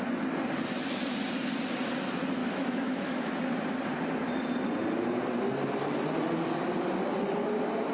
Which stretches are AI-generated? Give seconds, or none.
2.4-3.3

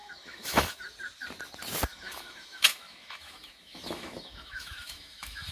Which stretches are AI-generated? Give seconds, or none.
0.0-0.8; 1.9-5.5

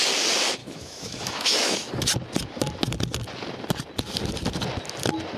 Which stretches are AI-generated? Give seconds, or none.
0.6-1.9

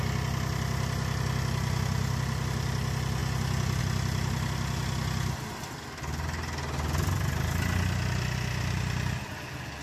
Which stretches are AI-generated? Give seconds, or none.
none

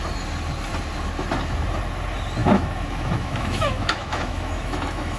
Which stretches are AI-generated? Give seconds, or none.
2.4-5.2

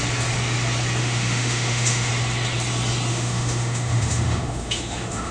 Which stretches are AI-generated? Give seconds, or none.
1.0-2.1; 3.1-5.3

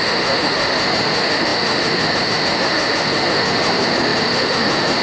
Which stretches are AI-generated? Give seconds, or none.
0.0-5.0

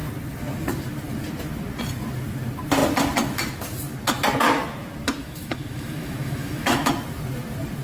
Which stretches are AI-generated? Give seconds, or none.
5.2-6.9